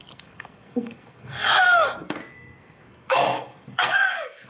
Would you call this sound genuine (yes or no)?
no